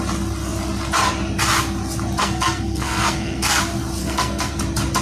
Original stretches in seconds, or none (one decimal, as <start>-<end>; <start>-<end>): 0.0-2.2; 3.6-4.0; 4.6-5.0